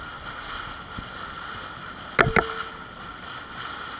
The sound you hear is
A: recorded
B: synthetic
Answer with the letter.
A